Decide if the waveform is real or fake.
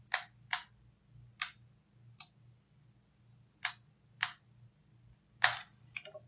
real